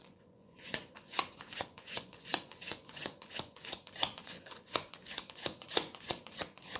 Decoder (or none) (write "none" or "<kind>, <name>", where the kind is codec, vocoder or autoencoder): vocoder, Vocos